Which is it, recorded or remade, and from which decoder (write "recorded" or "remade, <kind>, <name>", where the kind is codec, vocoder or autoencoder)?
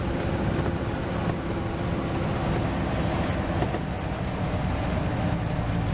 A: recorded